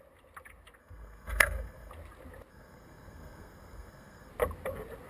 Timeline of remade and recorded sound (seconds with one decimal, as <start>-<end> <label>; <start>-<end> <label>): 0.0-0.8 recorded; 0.8-1.9 remade; 1.9-2.5 recorded; 2.5-4.3 remade; 4.3-5.1 recorded